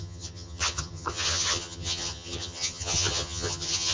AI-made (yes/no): yes